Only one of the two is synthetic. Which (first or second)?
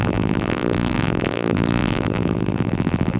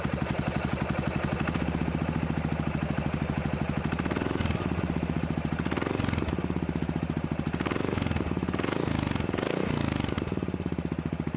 first